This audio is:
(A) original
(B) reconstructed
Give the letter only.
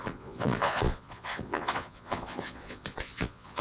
B